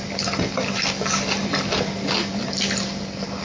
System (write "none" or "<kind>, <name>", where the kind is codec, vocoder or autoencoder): none